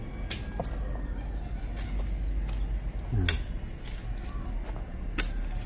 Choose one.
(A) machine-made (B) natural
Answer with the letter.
B